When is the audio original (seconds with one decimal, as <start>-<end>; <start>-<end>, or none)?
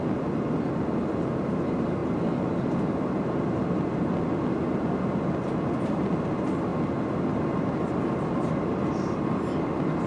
0.0-10.1